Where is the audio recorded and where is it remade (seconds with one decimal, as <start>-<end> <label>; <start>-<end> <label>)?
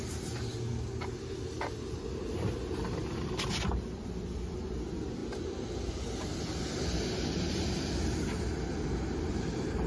0.0-9.9 recorded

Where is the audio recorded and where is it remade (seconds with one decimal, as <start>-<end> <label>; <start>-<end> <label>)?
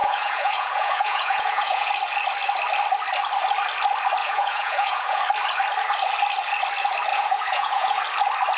0.0-1.9 remade; 1.9-4.2 recorded; 4.2-5.2 remade; 5.2-7.1 recorded; 7.1-8.0 remade; 8.0-8.6 recorded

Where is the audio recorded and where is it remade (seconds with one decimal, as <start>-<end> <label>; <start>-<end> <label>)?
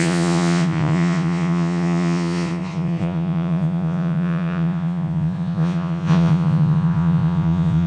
0.0-7.9 remade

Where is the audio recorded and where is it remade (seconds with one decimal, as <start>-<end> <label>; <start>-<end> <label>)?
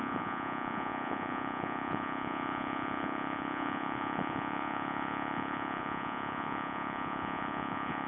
0.0-8.1 remade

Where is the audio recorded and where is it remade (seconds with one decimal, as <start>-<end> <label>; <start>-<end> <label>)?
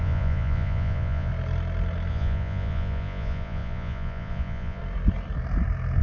0.0-1.3 remade; 1.3-2.1 recorded; 2.1-4.8 remade; 4.8-6.0 recorded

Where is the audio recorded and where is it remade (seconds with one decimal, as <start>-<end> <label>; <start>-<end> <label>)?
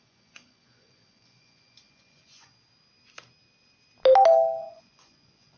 0.0-2.5 remade; 2.5-4.6 recorded; 4.6-5.6 remade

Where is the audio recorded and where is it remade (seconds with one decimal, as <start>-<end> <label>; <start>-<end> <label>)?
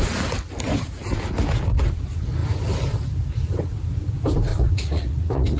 0.0-4.5 recorded; 4.5-5.6 remade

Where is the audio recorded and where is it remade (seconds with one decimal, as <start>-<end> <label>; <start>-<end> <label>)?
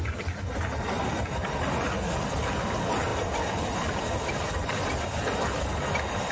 0.0-6.3 recorded